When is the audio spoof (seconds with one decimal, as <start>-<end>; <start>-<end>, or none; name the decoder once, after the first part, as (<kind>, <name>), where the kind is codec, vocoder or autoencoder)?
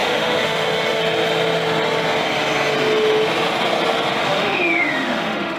0.0-1.0 (autoencoder, DAC-VAE); 4.2-5.6